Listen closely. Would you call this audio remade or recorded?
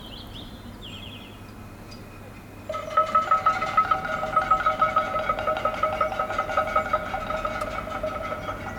recorded